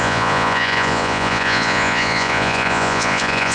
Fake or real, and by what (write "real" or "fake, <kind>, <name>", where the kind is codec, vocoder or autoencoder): fake, vocoder, Vocos